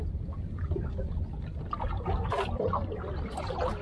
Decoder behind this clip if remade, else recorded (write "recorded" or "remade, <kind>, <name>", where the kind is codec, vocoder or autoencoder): recorded